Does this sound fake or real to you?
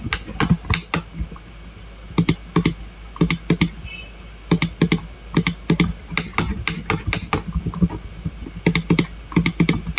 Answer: real